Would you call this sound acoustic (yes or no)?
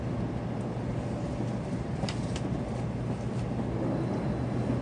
yes